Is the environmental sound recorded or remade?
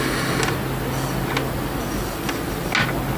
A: recorded